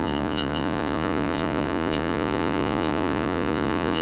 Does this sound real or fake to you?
fake